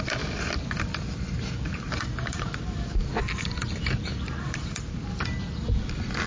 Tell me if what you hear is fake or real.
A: real